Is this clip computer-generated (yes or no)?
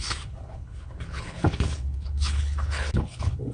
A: yes